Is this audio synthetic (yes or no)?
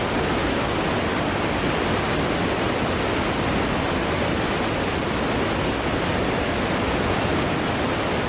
no